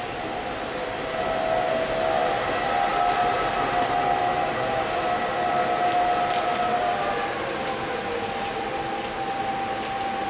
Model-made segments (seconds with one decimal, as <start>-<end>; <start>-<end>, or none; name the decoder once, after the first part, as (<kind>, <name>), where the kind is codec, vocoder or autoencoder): 2.9-5.5 (vocoder, BigVGAN v2)

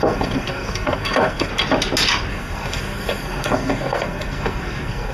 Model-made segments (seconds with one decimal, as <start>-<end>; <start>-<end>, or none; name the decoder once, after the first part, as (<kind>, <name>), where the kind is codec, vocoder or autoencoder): 0.0-1.5 (codec, SNAC); 2.3-5.1

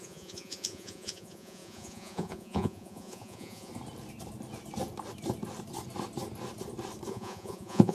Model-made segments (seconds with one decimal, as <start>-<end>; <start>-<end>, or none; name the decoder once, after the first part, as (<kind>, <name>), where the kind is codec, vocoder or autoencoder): 0.0-3.7 (vocoder, Vocos); 7.1-7.9

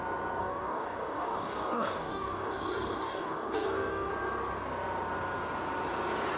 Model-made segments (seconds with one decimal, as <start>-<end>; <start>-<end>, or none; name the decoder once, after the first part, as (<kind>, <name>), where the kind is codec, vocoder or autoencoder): 0.4-4.1 (codec, DAC)

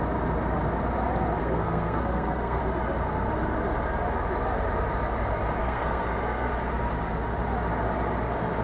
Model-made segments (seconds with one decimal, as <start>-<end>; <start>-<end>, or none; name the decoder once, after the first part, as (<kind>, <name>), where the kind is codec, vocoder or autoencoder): 1.4-2.6 (codec, SNAC); 5.6-6.5

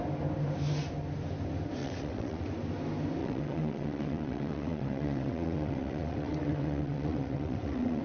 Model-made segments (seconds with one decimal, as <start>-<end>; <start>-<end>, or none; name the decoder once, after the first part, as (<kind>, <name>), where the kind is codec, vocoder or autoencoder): 1.8-2.5 (vocoder, WaveNeXt); 3.2-8.0